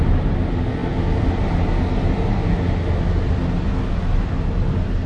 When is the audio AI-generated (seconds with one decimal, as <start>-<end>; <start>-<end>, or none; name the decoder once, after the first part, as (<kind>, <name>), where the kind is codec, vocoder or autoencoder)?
none